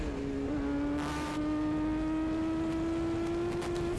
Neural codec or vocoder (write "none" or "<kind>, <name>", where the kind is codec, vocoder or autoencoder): none